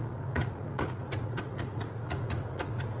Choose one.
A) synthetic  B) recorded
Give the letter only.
A